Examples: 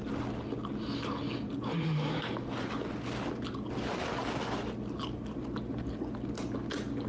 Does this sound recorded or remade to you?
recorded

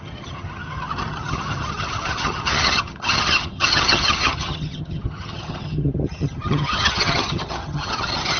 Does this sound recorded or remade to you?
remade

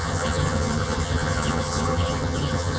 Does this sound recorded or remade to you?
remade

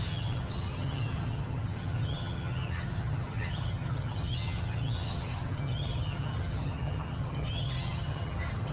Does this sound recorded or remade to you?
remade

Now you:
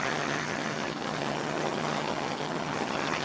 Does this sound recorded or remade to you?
remade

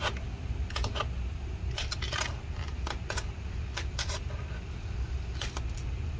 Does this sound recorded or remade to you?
recorded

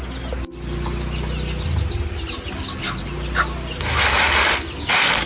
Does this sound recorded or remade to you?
recorded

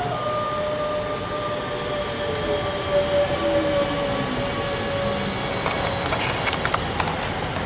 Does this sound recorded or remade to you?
recorded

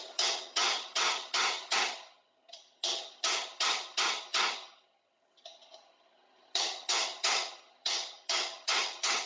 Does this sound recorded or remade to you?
remade